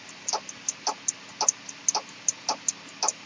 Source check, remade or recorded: recorded